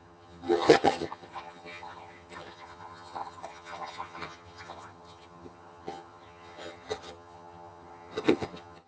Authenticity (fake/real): fake